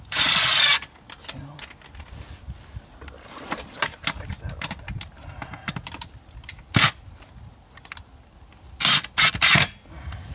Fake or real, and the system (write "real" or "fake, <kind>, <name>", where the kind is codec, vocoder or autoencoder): real